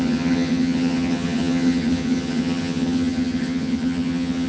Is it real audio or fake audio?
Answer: fake